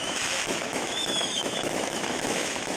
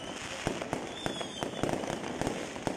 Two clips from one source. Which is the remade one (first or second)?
first